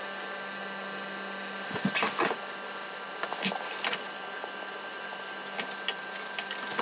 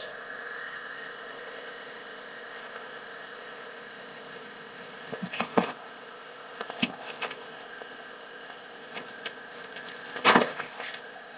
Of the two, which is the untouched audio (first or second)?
first